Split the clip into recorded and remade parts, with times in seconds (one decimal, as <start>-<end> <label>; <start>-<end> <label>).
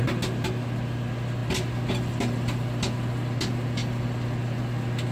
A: 0.0-5.1 recorded